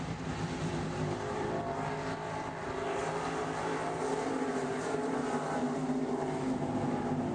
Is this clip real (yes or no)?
no